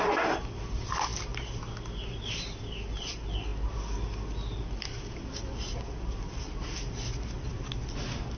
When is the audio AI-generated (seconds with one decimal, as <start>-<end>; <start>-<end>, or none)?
none